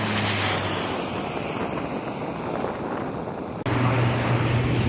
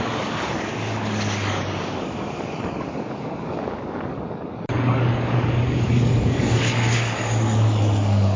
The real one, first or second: first